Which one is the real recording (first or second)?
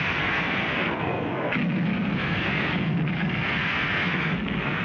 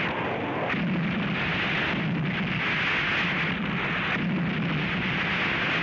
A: second